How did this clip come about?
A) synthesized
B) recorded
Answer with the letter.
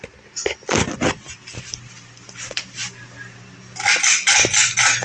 A